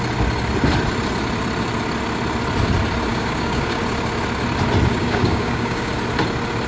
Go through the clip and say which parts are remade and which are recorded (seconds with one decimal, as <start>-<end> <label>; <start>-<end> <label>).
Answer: 0.0-3.1 recorded; 3.1-3.8 remade; 3.8-4.9 recorded; 4.9-5.9 remade; 5.9-6.7 recorded